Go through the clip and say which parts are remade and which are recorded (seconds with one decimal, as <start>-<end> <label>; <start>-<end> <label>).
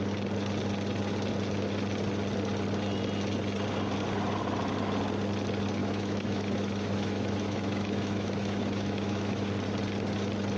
0.0-5.8 recorded; 5.8-9.5 remade; 9.5-10.6 recorded